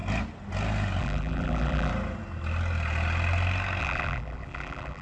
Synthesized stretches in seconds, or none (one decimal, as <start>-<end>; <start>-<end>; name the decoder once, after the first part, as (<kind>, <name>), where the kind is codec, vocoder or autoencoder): 1.0-1.9 (vocoder, BigVGAN v2); 3.8-5.0